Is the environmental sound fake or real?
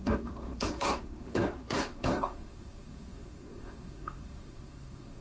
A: fake